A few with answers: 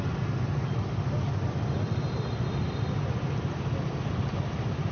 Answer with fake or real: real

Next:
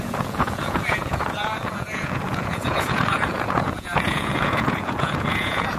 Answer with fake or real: fake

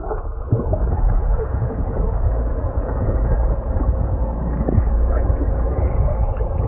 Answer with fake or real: fake